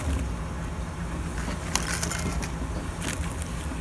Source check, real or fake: real